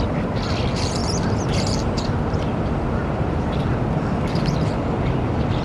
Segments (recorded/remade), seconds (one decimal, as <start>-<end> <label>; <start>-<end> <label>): 0.0-5.6 remade